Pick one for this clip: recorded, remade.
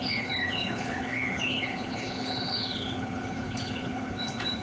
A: remade